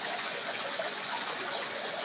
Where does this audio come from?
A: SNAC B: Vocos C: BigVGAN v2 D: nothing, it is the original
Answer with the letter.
B